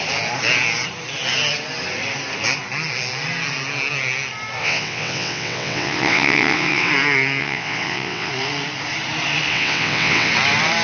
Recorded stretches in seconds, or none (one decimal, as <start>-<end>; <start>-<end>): 0.0-4.6; 6.9-7.4; 8.3-9.5; 10.3-10.8

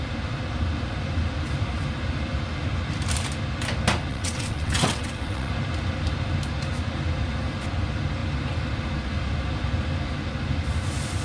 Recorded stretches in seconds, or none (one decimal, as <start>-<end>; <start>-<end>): 0.0-4.1; 5.5-11.2

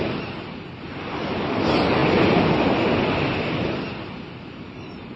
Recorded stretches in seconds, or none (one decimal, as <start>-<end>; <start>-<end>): none

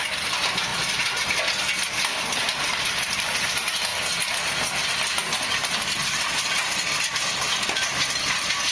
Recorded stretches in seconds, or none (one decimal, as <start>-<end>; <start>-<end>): 0.0-8.7

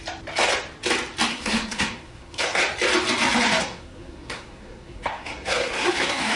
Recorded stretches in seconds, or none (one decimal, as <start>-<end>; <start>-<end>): 0.0-1.3; 2.6-3.6

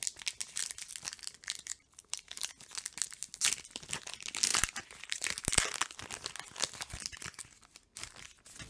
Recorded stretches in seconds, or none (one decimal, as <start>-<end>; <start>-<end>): 0.0-1.7; 2.5-4.5; 5.5-8.7

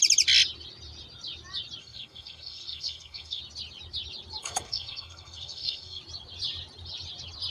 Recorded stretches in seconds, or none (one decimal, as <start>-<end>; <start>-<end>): 0.0-1.8; 3.4-4.4; 6.0-7.5